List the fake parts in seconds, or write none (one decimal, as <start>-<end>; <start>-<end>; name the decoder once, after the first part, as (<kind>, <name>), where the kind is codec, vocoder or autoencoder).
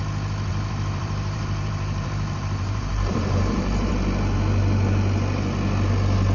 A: 0.5-3.9 (vocoder, BigVGAN v2)